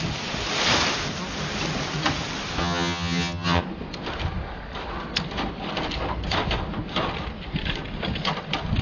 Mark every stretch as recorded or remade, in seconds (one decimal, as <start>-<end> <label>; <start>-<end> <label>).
0.0-2.6 recorded; 2.6-3.6 remade; 3.6-8.8 recorded